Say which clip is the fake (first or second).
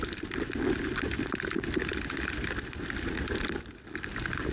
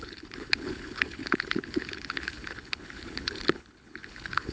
second